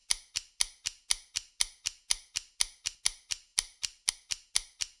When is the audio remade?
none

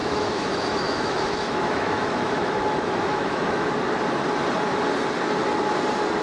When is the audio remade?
0.0-3.7 (autoencoder, DAC-VAE)

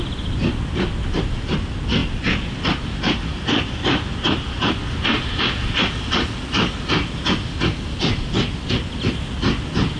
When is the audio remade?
2.0-5.4 (vocoder, BigVGAN v2)

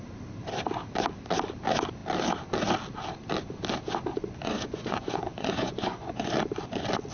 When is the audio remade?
4.1-6.3 (vocoder, Vocos)